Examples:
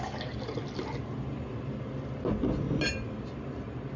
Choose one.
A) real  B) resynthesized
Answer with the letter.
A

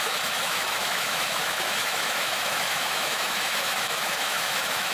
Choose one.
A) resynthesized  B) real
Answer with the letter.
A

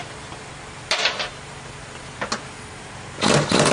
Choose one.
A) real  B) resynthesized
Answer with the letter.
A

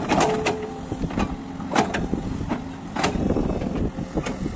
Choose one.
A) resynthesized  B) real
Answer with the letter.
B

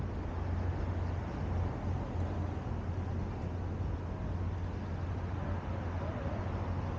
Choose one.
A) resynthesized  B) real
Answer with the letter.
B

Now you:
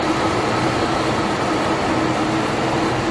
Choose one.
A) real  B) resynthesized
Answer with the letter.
A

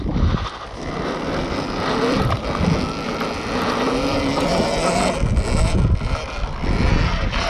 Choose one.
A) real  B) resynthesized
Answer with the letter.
A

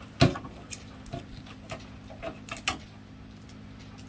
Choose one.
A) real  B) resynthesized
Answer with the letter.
A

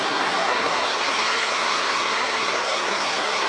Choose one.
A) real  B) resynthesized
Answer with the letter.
B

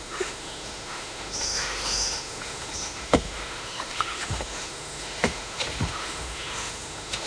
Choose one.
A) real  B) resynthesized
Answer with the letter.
B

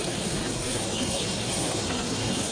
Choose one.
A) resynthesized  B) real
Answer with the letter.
A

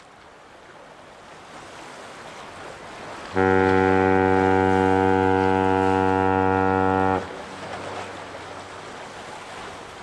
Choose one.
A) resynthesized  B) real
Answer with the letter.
B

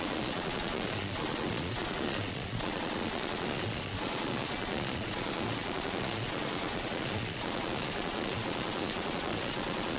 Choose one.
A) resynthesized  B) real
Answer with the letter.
A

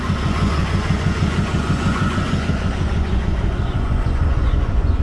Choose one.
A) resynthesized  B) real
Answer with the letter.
A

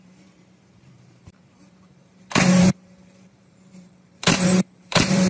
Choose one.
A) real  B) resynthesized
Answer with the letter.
B